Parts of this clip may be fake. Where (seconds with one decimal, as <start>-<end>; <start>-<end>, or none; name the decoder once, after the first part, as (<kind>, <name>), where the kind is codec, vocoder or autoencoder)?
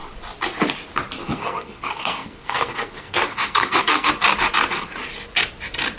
1.2-4.1 (codec, SNAC)